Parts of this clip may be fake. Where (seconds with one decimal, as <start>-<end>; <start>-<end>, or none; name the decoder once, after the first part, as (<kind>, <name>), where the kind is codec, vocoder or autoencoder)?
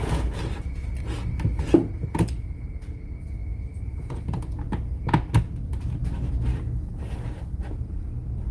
none